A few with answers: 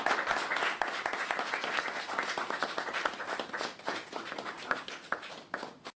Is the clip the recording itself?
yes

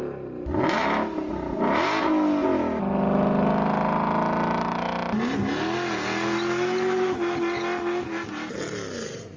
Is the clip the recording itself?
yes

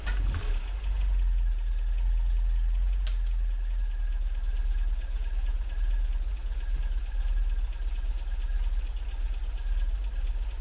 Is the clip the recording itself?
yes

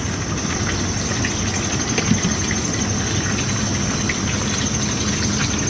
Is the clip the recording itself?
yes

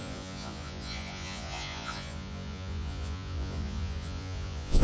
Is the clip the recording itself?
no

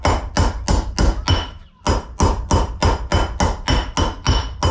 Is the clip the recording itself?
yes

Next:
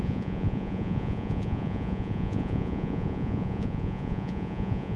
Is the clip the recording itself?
no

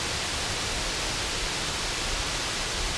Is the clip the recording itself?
yes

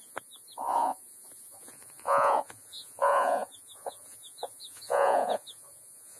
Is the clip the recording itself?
no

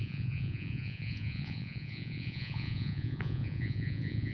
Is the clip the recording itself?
no